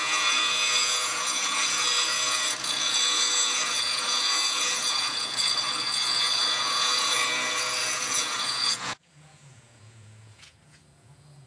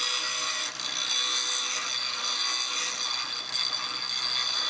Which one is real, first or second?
second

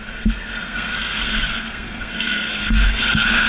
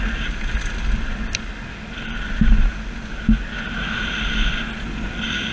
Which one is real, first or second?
second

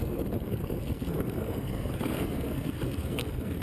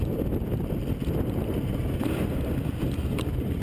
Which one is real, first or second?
second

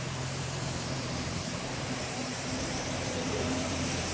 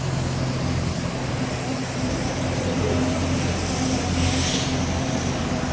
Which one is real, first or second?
second